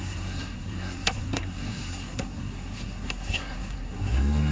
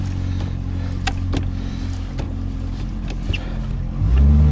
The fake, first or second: first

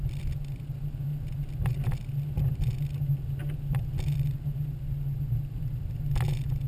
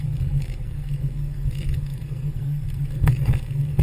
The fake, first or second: second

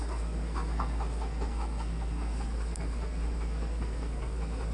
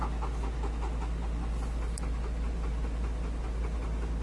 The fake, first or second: first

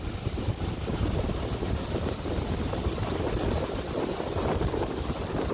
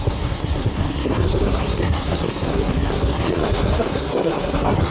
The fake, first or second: second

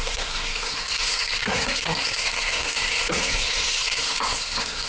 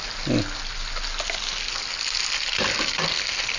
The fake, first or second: first